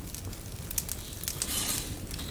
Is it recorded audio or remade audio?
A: recorded